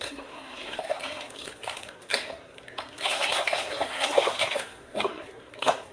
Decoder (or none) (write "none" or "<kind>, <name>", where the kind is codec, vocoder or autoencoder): codec, SNAC